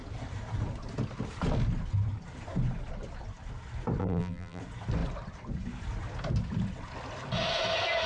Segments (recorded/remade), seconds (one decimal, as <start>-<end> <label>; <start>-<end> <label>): 0.0-4.0 recorded; 4.0-4.6 remade; 4.6-8.1 recorded